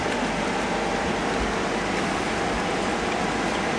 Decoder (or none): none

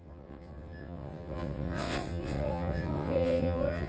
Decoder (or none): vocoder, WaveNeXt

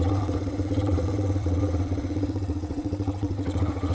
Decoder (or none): vocoder, WaveNeXt